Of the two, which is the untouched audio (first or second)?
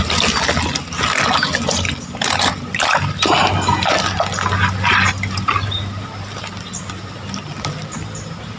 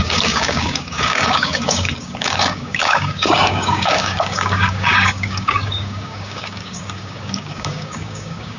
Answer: first